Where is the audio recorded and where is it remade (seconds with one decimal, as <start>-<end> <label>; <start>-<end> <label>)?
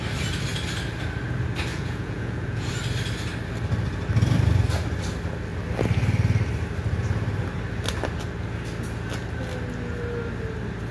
0.0-1.7 recorded; 1.7-2.7 remade; 2.7-10.9 recorded